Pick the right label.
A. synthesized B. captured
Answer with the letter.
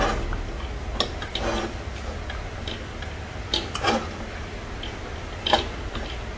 B